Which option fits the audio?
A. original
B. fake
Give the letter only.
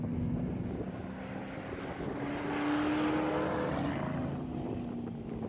A